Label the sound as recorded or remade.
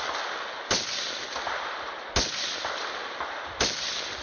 recorded